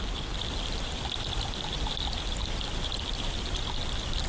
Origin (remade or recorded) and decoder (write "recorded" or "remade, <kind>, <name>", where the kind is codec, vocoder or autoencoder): recorded